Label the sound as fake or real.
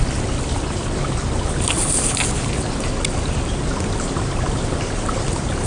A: real